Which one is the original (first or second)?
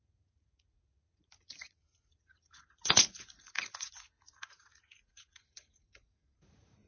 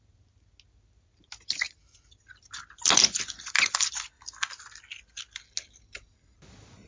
second